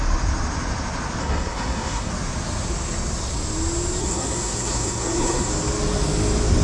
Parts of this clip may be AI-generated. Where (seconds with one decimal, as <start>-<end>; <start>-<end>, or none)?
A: 1.2-2.1; 4.0-5.5